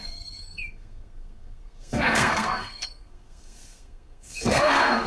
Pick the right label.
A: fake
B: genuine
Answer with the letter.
A